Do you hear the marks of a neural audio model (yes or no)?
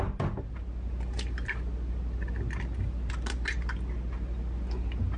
no